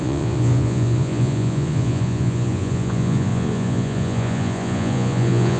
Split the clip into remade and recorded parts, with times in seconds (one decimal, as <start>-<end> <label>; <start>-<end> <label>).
0.0-5.6 remade